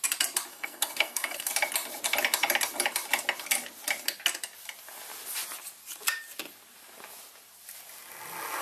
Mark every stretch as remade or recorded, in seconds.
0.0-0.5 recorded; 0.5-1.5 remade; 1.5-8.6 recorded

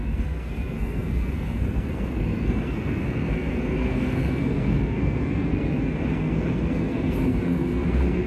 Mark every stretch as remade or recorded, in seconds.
0.0-8.3 remade

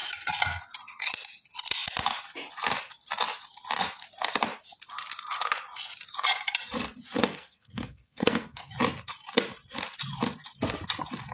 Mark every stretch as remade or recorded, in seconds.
0.0-7.2 recorded; 7.2-8.7 remade; 8.7-11.3 recorded